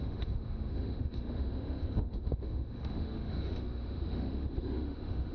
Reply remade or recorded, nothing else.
remade